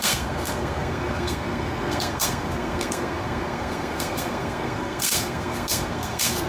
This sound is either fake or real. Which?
fake